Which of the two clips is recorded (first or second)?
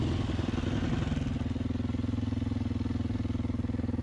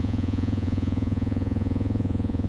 first